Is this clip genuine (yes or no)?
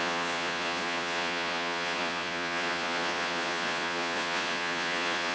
no